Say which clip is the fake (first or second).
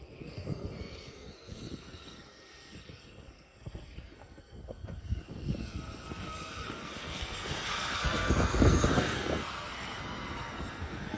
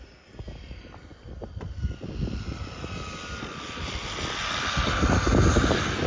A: first